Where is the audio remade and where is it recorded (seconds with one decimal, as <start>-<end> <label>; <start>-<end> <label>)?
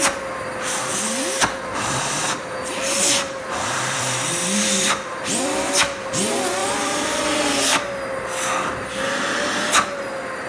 0.0-0.9 recorded; 0.9-6.1 remade; 6.1-6.6 recorded; 6.6-7.5 remade; 7.5-10.5 recorded